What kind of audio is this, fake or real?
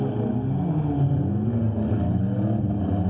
real